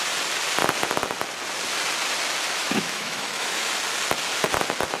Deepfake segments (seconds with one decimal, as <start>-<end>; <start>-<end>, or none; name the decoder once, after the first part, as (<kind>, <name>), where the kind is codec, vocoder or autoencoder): 2.6-3.7 (autoencoder, DAC-VAE)